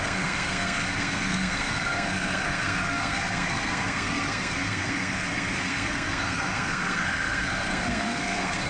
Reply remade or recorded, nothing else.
remade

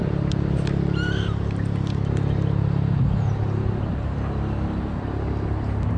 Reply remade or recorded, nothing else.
recorded